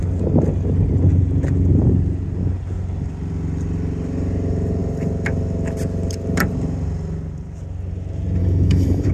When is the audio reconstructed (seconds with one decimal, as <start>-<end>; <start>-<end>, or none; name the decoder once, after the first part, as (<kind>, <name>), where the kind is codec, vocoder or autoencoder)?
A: 8.4-9.1 (autoencoder, DAC-VAE)